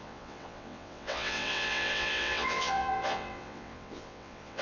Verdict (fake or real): fake